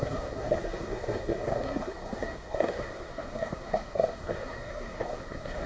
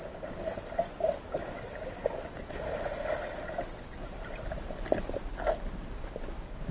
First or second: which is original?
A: second